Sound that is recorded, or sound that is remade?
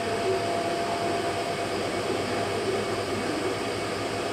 recorded